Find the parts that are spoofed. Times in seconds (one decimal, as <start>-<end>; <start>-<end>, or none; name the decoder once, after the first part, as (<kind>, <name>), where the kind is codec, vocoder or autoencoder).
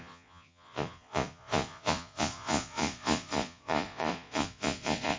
0.0-5.2 (vocoder, Vocos)